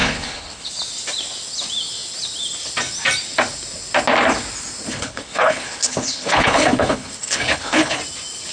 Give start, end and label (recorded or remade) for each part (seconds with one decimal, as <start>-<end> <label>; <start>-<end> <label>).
0.0-0.7 remade; 0.7-4.9 recorded; 4.9-8.0 remade; 8.0-8.5 recorded